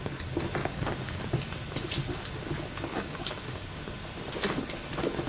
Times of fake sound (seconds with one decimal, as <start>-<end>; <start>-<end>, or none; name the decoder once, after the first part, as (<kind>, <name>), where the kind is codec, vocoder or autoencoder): 0.6-1.2 (codec, DAC); 2.9-3.8